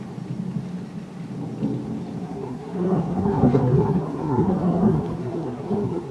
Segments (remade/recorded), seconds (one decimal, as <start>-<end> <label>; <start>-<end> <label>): 0.0-2.2 recorded; 2.2-6.1 remade